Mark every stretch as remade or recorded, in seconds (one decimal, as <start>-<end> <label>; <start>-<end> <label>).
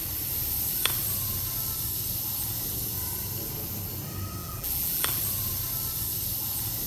0.0-4.4 recorded; 4.4-5.2 remade; 5.2-6.9 recorded